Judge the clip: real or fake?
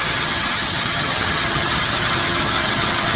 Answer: fake